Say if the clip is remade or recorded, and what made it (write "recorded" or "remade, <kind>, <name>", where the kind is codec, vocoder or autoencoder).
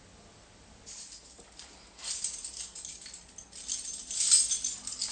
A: recorded